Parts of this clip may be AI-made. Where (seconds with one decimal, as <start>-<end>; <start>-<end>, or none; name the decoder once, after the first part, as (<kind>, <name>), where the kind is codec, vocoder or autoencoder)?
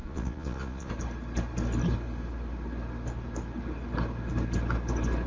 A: 0.0-0.9 (vocoder, Vocos)